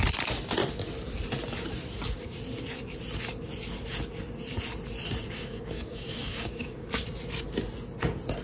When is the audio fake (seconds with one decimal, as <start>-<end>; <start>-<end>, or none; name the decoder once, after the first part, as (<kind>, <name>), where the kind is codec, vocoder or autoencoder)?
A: 5.4-7.0 (codec, DAC)